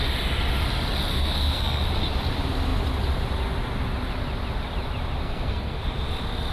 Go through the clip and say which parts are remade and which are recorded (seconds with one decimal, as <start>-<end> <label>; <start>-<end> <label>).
0.0-1.1 recorded; 1.1-1.8 remade; 1.8-5.2 recorded; 5.2-5.8 remade; 5.8-6.5 recorded